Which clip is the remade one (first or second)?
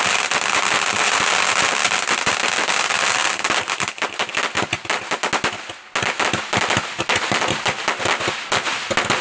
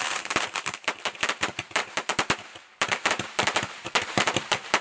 second